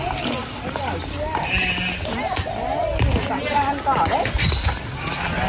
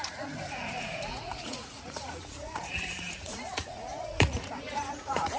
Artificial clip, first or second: second